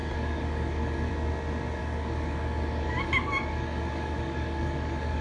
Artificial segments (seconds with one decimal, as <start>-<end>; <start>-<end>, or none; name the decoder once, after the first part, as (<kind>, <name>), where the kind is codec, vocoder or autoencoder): 0.0-1.1 (codec, DAC); 1.8-5.2

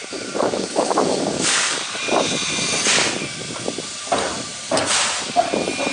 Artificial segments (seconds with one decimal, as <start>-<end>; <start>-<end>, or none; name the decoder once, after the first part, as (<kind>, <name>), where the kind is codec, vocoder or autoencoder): 0.0-2.0 (codec, DAC)

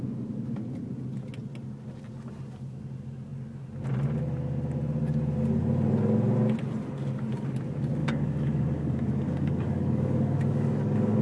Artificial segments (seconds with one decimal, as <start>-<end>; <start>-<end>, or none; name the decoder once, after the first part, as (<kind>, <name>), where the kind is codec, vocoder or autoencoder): 8.0-11.2 (codec, DAC)

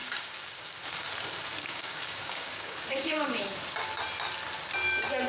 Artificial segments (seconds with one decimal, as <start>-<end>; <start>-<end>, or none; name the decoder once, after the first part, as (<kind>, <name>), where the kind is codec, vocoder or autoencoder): 0.0-1.1 (codec, DAC); 1.6-3.6

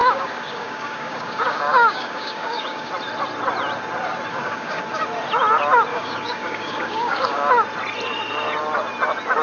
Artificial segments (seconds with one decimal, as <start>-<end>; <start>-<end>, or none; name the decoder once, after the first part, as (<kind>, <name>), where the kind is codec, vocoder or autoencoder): 0.0-2.9 (codec, DAC); 4.3-4.8; 5.9-7.5

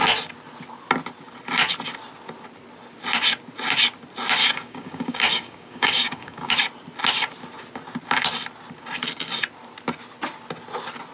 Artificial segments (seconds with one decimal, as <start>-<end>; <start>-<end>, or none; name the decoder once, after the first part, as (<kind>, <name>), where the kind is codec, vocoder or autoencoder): 4.4-6.5 (codec, DAC)

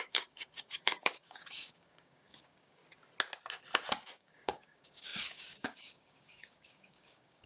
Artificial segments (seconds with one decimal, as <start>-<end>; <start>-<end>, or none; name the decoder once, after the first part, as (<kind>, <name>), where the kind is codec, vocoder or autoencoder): 0.0-2.8 (codec, DAC); 4.1-7.5

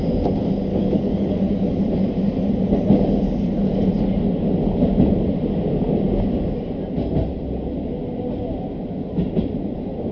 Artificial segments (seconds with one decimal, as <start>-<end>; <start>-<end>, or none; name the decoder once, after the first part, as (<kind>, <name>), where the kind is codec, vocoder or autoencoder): 0.7-1.8 (codec, DAC)